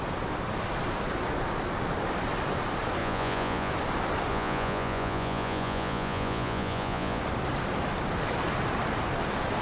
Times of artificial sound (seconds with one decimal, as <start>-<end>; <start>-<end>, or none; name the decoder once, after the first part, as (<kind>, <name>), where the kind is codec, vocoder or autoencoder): 3.0-3.7 (vocoder, Vocos); 4.3-7.2